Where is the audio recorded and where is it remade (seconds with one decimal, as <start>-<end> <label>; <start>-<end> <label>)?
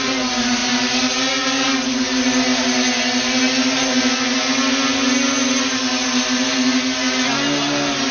0.0-8.1 recorded